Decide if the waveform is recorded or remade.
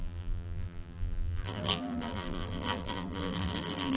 remade